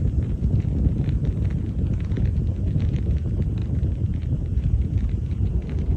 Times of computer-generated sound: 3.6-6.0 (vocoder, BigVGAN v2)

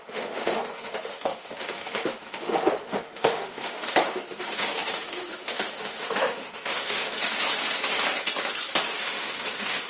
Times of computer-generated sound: 0.0-7.1 (autoencoder, DAC-VAE); 9.0-9.9